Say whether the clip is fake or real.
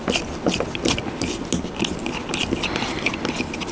real